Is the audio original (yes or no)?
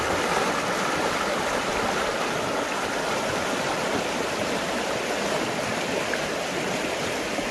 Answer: no